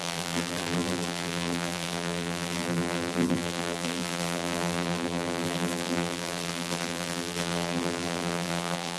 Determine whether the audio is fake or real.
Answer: fake